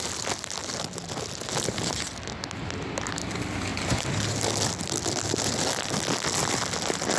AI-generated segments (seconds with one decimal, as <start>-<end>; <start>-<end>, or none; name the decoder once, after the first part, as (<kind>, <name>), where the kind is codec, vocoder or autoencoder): none